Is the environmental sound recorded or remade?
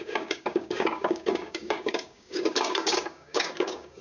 remade